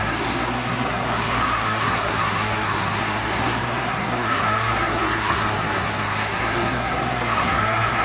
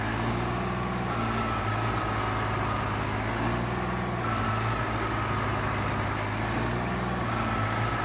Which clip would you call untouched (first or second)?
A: second